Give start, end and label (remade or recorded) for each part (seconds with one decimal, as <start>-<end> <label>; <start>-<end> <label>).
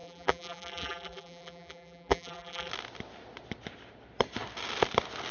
0.0-2.7 remade; 2.7-5.3 recorded